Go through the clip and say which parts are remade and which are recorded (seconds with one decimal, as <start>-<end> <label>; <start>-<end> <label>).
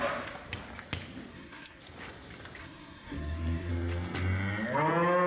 0.0-1.3 recorded; 1.3-1.8 remade; 1.8-2.6 recorded; 2.6-3.7 remade; 3.7-5.3 recorded